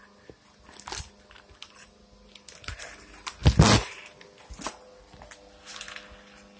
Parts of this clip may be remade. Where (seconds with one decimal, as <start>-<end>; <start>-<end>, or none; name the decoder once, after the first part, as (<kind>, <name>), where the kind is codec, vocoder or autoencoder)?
none